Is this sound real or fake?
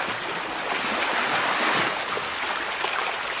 real